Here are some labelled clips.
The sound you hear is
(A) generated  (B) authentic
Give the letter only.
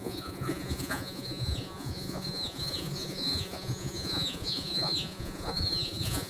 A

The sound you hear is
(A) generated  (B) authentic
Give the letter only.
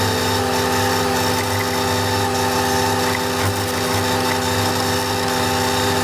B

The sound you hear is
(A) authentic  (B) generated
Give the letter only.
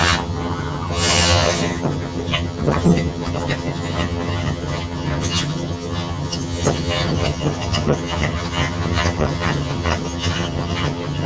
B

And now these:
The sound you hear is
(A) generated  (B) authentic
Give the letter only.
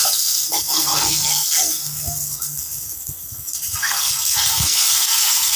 A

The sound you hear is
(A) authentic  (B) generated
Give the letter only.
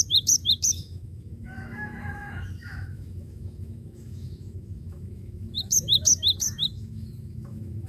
B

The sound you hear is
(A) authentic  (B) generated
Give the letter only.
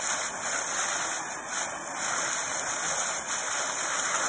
A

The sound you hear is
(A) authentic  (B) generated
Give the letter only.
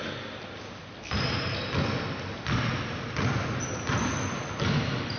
A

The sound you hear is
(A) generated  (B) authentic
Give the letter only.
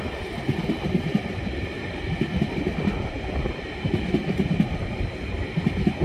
B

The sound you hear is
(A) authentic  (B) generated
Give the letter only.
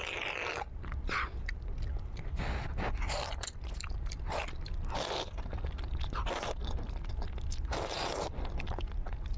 A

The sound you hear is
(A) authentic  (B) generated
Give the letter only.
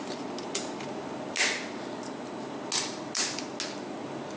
A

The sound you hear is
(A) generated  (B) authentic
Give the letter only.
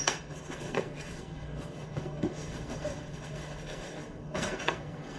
A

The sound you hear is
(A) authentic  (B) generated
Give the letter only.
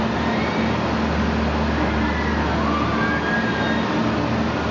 A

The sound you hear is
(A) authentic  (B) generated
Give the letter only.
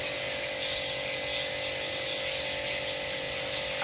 A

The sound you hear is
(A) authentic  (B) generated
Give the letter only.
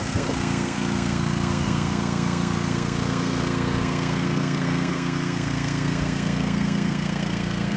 B